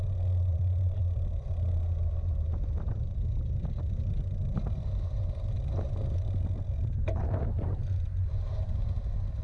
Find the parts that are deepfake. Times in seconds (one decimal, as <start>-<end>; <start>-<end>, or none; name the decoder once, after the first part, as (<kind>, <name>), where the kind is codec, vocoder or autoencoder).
0.5-1.0 (vocoder, BigVGAN v2)